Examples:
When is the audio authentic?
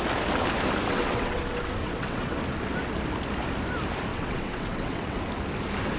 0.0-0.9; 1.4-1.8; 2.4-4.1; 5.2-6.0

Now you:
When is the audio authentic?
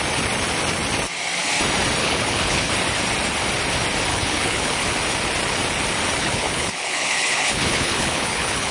0.0-2.0; 2.7-4.1; 4.8-6.2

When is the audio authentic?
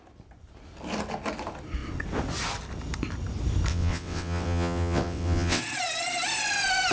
0.0-3.7; 5.6-6.9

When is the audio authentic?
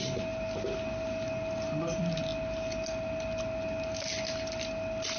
0.0-5.2